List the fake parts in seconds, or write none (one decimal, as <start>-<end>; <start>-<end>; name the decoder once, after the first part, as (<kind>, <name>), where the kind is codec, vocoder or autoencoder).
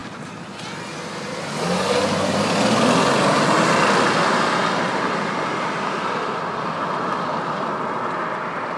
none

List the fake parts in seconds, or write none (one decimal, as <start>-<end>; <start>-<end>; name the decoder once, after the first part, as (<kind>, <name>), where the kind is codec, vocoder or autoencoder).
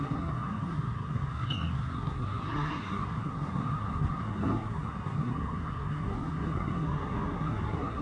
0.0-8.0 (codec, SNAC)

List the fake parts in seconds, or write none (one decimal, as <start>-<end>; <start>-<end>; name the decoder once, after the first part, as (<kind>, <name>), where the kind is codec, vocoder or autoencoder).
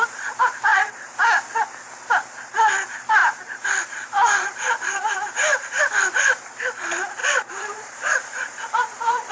0.7-1.4 (vocoder, BigVGAN v2); 3.2-5.8; 7.2-9.3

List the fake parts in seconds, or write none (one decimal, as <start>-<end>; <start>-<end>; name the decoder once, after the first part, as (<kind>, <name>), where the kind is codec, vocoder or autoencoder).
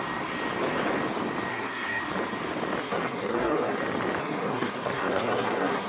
1.5-2.0 (codec, SNAC); 2.8-3.8; 4.2-5.9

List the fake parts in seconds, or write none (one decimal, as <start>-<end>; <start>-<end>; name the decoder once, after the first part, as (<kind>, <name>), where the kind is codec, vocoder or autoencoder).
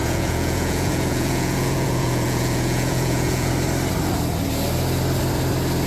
0.0-3.5 (vocoder, Vocos)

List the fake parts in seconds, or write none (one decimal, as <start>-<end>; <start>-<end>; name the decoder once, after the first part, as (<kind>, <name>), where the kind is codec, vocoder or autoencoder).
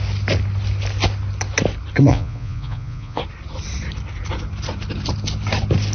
2.1-3.2 (vocoder, Vocos)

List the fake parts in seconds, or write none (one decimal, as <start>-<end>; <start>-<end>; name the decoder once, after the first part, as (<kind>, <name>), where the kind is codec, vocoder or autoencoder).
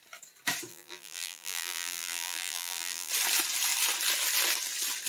0.7-3.1 (vocoder, BigVGAN v2)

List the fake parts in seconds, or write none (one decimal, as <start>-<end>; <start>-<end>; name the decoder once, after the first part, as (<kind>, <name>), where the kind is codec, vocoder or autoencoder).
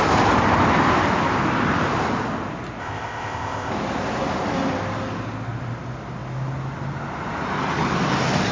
2.8-3.7 (codec, ZipCodec)